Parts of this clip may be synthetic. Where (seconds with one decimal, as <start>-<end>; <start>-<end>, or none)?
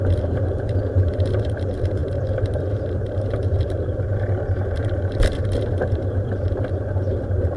0.0-7.6